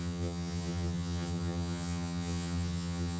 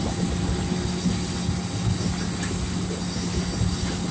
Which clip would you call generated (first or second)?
first